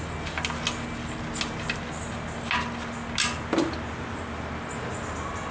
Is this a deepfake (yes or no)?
no